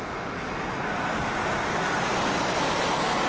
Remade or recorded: recorded